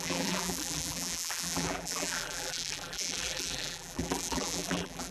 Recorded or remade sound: remade